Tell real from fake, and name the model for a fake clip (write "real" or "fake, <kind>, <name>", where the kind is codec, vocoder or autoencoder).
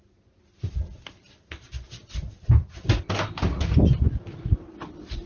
real